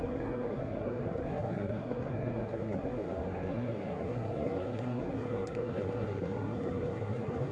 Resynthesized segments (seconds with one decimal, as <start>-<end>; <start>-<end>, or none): 0.0-7.5